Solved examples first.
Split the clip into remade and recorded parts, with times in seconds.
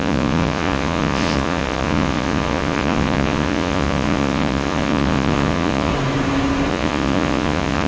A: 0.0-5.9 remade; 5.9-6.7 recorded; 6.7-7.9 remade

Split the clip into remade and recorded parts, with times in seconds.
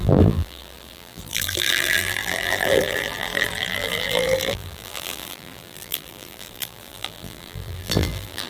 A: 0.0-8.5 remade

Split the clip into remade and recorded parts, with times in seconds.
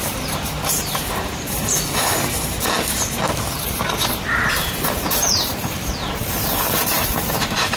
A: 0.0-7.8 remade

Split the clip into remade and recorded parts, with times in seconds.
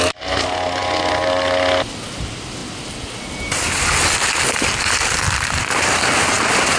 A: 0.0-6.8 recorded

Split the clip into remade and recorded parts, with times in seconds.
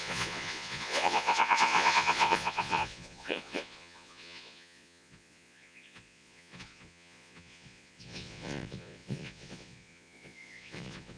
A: 0.0-11.2 remade